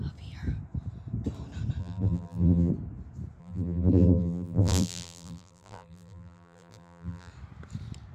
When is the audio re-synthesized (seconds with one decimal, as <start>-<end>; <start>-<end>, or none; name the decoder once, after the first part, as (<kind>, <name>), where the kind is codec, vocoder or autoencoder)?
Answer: 1.8-2.7 (vocoder, BigVGAN v2); 3.4-7.3